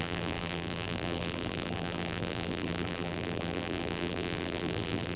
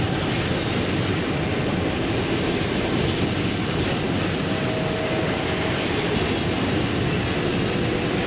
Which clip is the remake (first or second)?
first